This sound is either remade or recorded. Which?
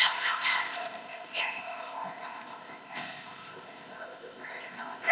remade